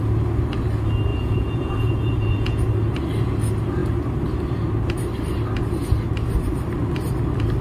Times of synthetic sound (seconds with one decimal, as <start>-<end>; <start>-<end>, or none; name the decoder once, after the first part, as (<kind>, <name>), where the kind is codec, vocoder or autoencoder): 1.1-2.6 (vocoder, Vocos)